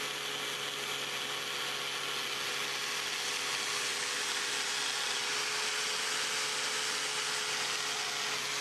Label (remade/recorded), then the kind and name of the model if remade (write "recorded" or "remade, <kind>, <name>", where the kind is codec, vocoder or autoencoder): recorded